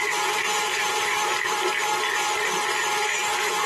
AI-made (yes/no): no